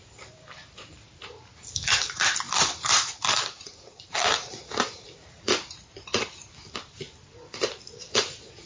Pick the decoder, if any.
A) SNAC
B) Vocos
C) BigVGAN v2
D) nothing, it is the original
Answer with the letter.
C